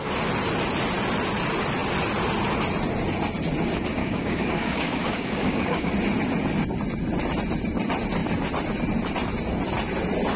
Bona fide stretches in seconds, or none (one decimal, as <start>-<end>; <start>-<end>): 0.0-4.0; 5.9-10.4